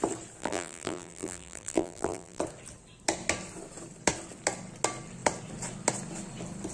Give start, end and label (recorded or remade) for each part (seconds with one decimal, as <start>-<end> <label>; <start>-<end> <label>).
0.0-0.4 recorded; 0.4-2.4 remade; 2.4-6.7 recorded